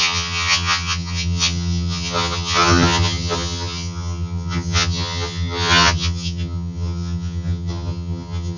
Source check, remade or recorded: remade